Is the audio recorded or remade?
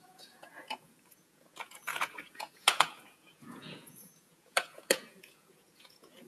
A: remade